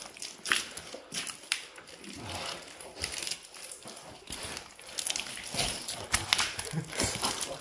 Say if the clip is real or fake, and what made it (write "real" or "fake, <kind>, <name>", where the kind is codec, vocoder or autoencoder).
real